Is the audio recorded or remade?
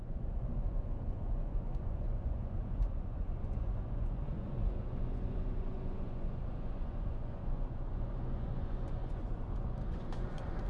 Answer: remade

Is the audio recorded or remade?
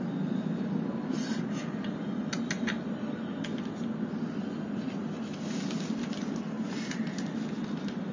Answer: recorded